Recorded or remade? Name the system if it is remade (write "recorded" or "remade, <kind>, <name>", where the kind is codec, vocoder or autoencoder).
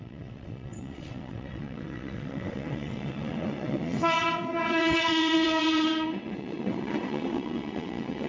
remade, vocoder, WaveNeXt